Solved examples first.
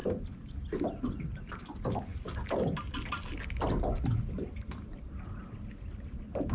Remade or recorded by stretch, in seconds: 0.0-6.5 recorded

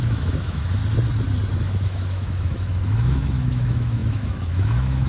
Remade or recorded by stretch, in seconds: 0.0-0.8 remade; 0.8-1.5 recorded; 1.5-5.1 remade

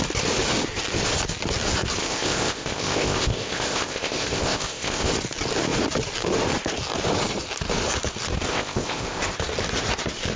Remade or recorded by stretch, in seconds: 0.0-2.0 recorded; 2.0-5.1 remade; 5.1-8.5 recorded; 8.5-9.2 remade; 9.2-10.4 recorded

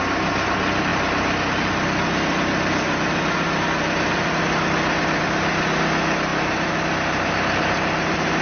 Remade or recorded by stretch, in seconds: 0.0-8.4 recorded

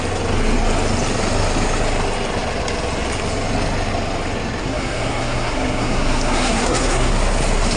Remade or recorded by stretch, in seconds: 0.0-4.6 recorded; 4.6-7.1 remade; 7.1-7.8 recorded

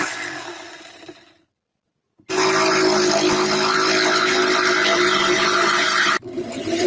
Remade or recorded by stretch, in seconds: 0.0-4.9 recorded; 4.9-6.9 remade